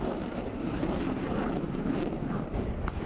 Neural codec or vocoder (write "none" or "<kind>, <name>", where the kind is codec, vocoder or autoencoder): vocoder, BigVGAN v2